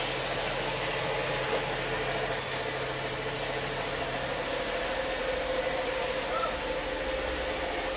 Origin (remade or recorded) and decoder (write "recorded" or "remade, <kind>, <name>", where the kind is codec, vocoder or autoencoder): recorded